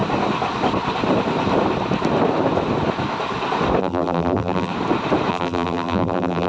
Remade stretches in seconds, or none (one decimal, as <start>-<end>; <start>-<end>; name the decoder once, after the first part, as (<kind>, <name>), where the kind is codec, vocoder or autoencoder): 3.8-4.7 (vocoder, BigVGAN v2); 5.3-6.5